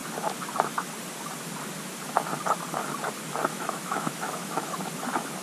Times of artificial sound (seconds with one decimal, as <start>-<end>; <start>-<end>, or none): 3.5-4.8